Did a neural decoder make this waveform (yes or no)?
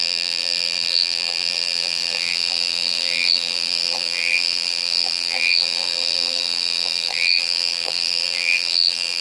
yes